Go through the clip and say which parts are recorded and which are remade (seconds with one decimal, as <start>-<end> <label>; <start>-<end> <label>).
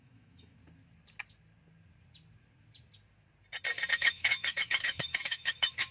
0.0-0.6 remade; 0.6-3.9 recorded; 3.9-5.9 remade